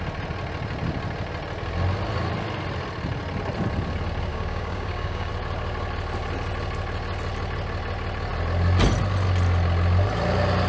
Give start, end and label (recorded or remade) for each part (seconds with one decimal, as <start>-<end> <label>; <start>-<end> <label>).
0.0-4.3 recorded; 4.3-5.3 remade; 5.3-10.7 recorded